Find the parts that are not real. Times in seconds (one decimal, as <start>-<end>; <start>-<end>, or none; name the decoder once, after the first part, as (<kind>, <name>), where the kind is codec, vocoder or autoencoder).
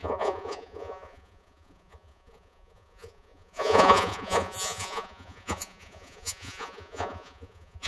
0.0-7.9 (vocoder, Vocos)